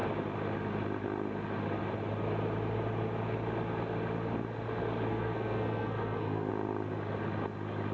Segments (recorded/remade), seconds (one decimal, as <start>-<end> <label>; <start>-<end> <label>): 0.0-5.1 recorded; 5.1-6.5 remade; 6.5-7.9 recorded